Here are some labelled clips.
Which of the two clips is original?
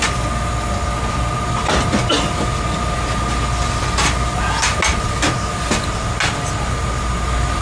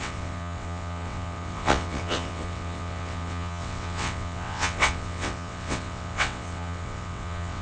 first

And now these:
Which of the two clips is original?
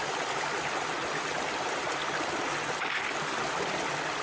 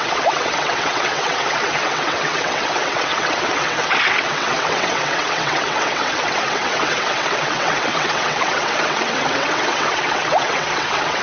first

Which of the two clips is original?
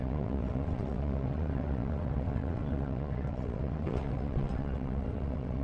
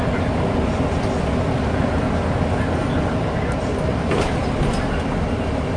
second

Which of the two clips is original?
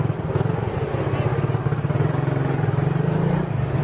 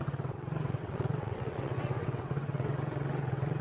first